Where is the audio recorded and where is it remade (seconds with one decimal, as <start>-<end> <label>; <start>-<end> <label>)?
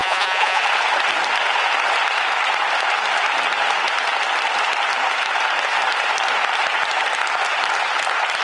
0.0-0.6 remade; 0.6-8.4 recorded